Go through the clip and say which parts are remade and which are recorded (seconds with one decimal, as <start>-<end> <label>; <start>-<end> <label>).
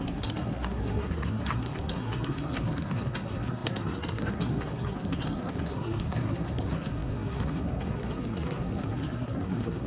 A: 0.0-9.9 remade